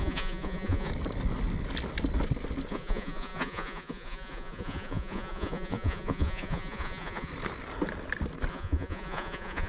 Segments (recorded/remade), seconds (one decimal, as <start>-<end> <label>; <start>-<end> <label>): 0.0-0.9 remade; 0.9-2.7 recorded; 2.7-7.3 remade; 7.3-8.5 recorded; 8.5-9.7 remade